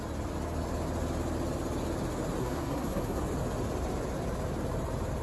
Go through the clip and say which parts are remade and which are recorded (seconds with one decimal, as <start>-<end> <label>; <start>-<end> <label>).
0.0-2.4 recorded; 2.4-3.2 remade; 3.2-5.2 recorded

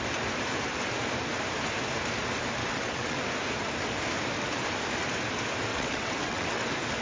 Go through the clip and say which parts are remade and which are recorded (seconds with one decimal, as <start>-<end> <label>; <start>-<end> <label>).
0.0-2.6 recorded; 2.6-3.2 remade; 3.2-5.7 recorded; 5.7-6.6 remade; 6.6-7.0 recorded

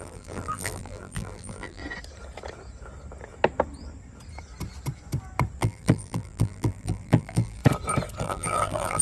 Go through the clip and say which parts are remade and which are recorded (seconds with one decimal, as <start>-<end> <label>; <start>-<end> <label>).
0.0-1.8 remade; 1.8-5.6 recorded; 5.6-7.6 remade; 7.6-8.2 recorded; 8.2-9.0 remade

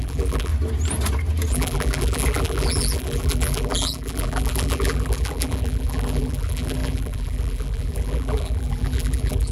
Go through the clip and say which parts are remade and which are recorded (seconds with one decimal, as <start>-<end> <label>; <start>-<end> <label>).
0.0-0.5 remade; 0.5-1.5 recorded; 1.5-9.5 remade

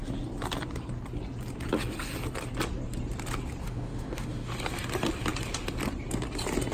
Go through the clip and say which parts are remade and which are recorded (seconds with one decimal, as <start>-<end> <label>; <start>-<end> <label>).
0.0-3.6 recorded; 3.6-4.5 remade; 4.5-6.7 recorded